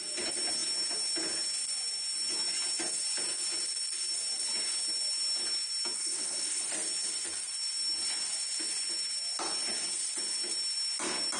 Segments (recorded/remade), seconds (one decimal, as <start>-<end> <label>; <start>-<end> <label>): 0.0-6.0 recorded; 6.0-6.6 remade; 6.6-11.4 recorded